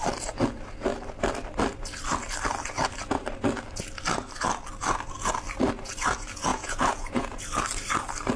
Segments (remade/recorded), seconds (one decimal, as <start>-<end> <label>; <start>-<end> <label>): 0.0-6.5 recorded; 6.5-7.4 remade; 7.4-8.4 recorded